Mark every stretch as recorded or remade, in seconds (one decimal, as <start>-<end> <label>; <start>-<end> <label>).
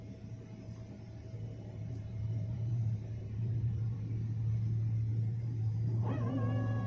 0.0-1.2 recorded; 1.2-4.1 remade; 4.1-5.1 recorded; 5.1-6.3 remade; 6.3-6.9 recorded